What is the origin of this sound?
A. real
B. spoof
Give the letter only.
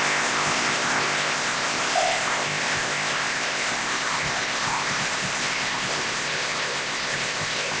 B